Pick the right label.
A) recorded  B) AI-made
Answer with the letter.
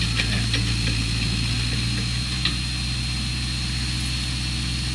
A